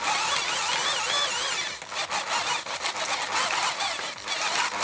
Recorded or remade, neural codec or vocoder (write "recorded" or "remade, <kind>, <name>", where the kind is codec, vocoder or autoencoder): recorded